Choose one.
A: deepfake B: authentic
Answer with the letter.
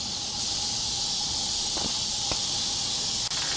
B